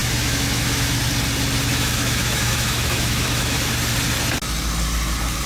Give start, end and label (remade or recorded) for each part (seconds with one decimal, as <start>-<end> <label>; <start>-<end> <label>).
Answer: 0.0-1.0 remade; 1.0-1.7 recorded; 1.7-3.7 remade; 3.7-5.5 recorded